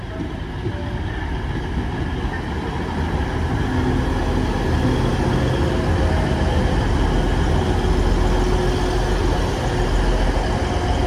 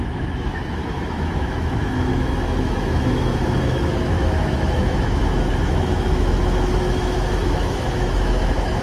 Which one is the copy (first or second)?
second